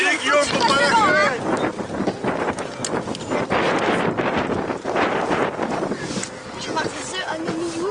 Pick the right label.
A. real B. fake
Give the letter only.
A